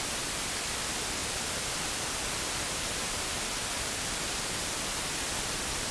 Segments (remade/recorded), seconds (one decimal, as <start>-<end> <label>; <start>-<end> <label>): 0.0-5.9 recorded